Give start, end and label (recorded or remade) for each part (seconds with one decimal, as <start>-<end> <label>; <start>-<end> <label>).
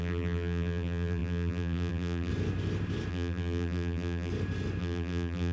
0.0-2.3 remade; 2.3-3.1 recorded; 3.1-4.3 remade; 4.3-4.8 recorded; 4.8-5.5 remade